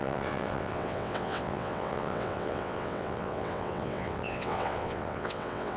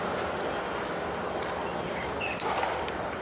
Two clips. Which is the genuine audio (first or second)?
second